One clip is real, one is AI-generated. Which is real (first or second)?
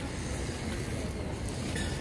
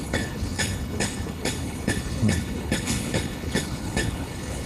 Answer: first